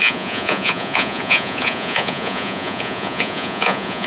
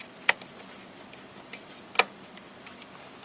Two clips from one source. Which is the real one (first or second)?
second